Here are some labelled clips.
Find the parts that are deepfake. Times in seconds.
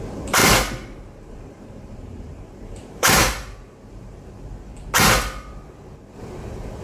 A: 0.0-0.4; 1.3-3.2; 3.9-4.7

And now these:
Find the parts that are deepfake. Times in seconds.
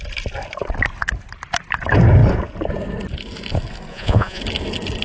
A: 3.9-4.4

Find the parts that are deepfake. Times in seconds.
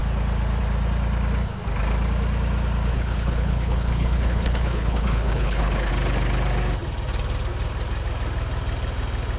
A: 2.9-5.9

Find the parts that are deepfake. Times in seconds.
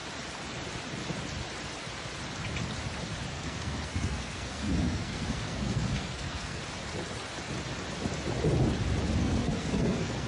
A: 3.3-6.6; 9.2-10.3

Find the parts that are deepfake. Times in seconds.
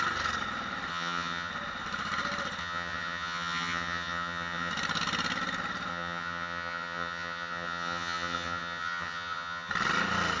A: 0.9-1.5; 2.6-4.7; 5.9-9.7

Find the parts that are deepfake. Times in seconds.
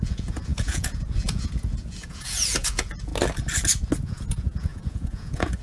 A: 0.0-3.1; 4.0-5.6